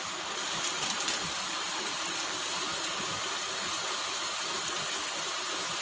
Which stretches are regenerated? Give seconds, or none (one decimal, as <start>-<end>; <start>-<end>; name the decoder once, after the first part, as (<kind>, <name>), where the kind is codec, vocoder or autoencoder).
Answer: 0.4-2.5 (vocoder, BigVGAN v2)